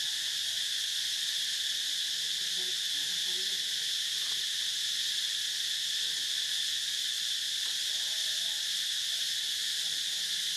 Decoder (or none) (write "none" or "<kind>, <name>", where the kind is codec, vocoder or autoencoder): none